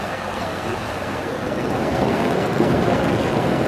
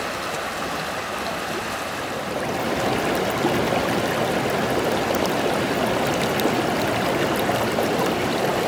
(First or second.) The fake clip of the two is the first